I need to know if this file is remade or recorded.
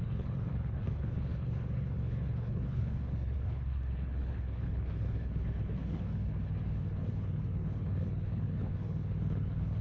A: remade